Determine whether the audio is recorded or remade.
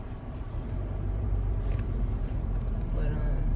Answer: remade